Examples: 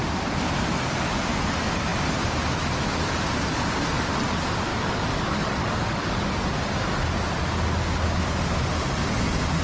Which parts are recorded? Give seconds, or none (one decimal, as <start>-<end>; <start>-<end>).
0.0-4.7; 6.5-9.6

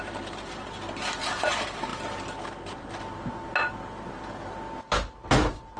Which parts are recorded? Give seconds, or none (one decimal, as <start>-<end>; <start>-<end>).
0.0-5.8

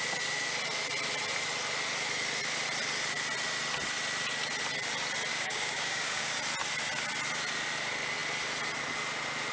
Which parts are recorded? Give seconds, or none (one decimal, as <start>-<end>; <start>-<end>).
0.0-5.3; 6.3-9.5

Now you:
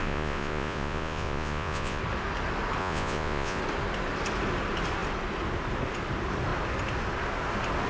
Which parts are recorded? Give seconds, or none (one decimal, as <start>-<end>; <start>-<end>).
2.0-2.8; 3.6-7.9